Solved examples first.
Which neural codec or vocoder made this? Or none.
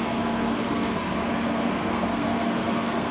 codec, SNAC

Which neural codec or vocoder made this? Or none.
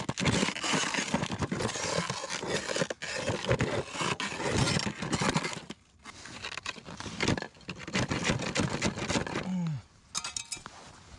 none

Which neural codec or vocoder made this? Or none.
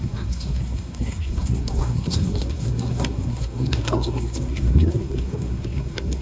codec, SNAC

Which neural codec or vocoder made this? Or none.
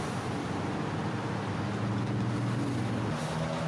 none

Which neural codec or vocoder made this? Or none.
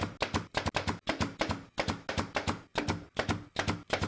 none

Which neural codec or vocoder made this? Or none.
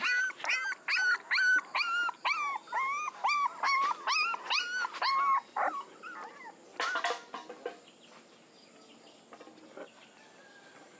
none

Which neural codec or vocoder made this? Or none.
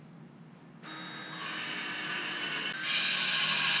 none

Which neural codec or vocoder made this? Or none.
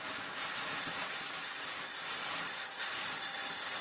none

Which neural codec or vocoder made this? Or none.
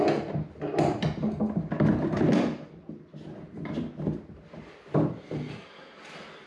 none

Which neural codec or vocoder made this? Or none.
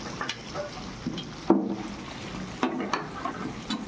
none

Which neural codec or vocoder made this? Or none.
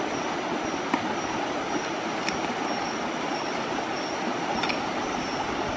none